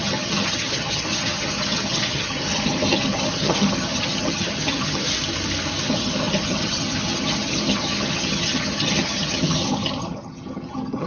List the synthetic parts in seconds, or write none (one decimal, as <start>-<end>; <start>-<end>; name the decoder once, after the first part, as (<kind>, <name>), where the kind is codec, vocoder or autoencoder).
0.0-5.1 (vocoder, HiFi-GAN); 5.8-11.1